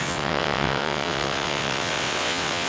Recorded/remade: remade